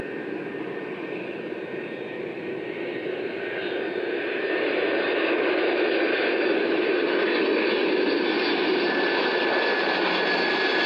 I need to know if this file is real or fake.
real